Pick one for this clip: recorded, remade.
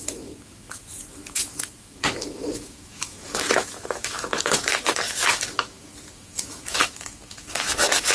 remade